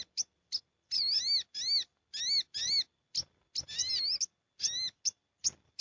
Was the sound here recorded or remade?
recorded